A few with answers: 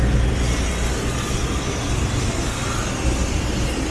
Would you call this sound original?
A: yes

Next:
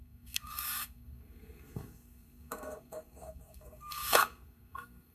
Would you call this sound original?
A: no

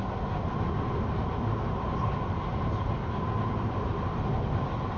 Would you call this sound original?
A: yes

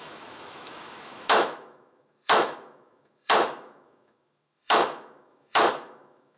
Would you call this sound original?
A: no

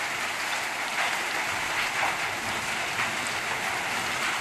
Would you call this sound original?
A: yes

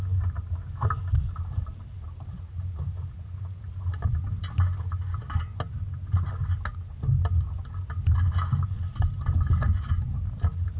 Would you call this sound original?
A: yes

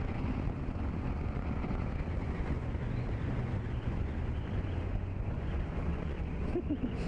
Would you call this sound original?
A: no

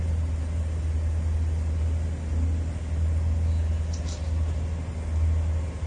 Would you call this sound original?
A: yes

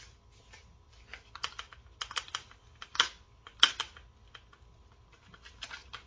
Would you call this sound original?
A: yes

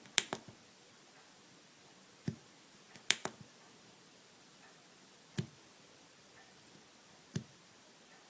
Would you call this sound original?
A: no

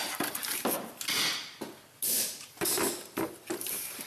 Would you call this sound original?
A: yes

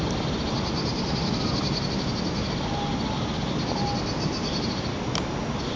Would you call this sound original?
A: yes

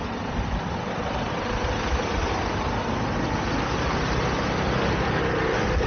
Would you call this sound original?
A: yes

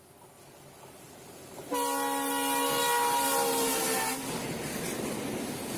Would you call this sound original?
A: yes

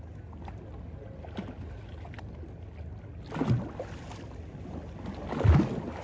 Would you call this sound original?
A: yes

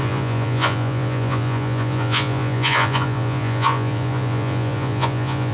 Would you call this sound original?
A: no